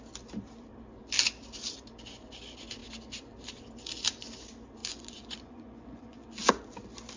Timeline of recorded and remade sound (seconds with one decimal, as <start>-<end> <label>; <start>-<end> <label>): 0.0-4.8 recorded; 4.8-6.5 remade; 6.5-7.2 recorded